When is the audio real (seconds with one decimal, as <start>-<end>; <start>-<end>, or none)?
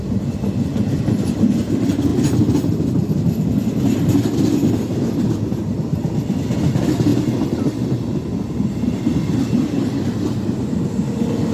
0.0-11.5